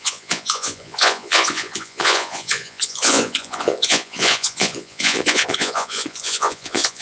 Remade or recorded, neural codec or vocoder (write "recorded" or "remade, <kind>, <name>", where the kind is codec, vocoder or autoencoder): remade, vocoder, Vocos